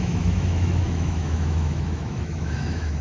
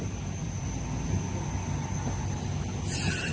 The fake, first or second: first